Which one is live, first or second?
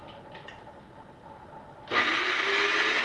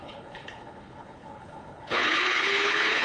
first